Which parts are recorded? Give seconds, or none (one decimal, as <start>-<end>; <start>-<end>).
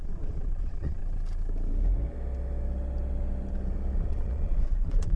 1.0-4.1